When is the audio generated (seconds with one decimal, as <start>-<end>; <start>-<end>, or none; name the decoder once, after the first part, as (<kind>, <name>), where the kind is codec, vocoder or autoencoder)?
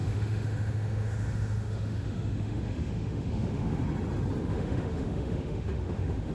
0.0-3.8 (autoencoder, DAC-VAE); 4.4-6.3